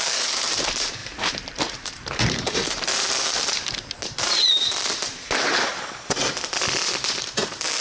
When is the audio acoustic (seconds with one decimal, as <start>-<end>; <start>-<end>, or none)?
5.7-7.1